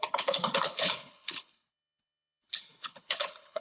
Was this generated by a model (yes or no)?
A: yes